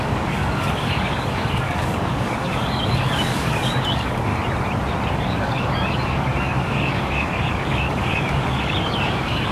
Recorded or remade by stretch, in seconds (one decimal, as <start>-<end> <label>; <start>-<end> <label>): 0.0-4.3 remade; 4.3-5.1 recorded; 5.1-9.5 remade